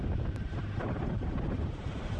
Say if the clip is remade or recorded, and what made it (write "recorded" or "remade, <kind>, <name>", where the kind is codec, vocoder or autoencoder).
remade, vocoder, BigVGAN v2